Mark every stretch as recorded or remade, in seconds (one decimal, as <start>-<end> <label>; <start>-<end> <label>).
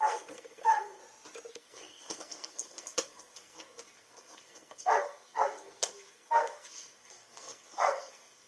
0.0-1.0 remade; 1.0-1.5 recorded; 1.5-8.5 remade